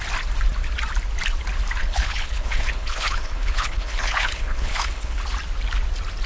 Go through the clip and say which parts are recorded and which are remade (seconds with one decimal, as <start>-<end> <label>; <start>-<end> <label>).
0.0-1.8 recorded; 1.8-5.2 remade; 5.2-6.3 recorded